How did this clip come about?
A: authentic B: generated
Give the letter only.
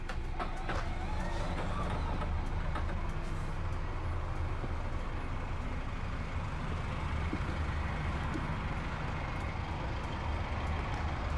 A